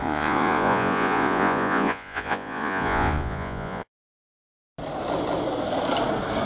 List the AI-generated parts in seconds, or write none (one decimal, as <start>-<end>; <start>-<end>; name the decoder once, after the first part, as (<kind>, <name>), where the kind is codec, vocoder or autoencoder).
0.0-3.9 (vocoder, Vocos)